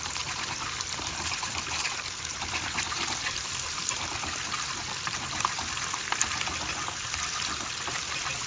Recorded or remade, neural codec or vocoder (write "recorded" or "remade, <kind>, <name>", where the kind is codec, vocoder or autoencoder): remade, vocoder, BigVGAN v2